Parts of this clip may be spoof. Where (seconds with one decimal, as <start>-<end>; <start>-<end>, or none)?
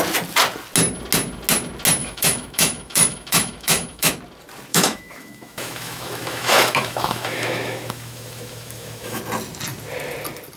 2.0-4.1; 4.7-9.2